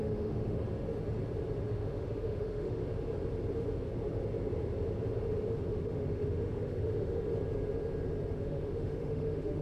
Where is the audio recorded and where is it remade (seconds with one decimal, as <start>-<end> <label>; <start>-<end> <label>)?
0.0-0.6 remade; 0.6-1.6 recorded; 1.6-2.8 remade; 2.8-5.7 recorded; 5.7-7.3 remade; 7.3-8.4 recorded; 8.4-9.6 remade